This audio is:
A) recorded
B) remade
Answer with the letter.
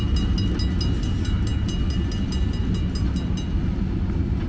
A